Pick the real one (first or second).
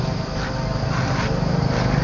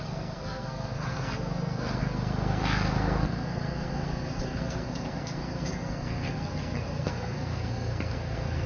first